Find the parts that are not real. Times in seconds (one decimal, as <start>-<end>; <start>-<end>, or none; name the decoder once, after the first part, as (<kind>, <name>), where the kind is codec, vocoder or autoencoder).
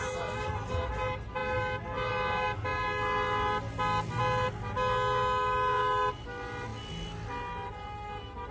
none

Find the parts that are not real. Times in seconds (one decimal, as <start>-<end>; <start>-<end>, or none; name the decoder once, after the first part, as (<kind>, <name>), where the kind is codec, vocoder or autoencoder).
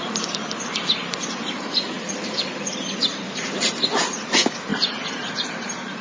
0.0-4.7 (vocoder, BigVGAN v2)